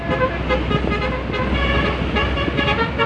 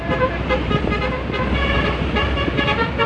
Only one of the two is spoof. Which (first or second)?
second